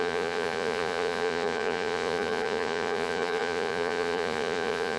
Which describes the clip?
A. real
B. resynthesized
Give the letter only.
B